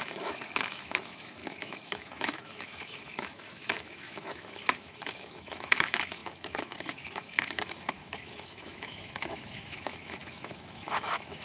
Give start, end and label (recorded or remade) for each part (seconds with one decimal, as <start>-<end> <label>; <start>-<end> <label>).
0.0-11.4 remade